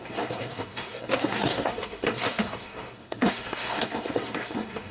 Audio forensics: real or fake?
fake